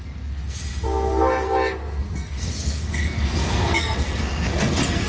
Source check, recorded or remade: remade